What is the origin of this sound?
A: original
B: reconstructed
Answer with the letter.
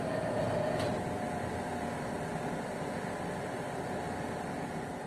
B